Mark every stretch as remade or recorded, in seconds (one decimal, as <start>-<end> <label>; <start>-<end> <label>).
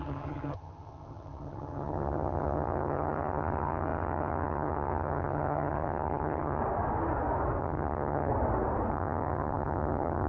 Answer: 0.0-6.6 remade; 6.6-7.6 recorded; 7.6-8.3 remade; 8.3-8.9 recorded; 8.9-10.3 remade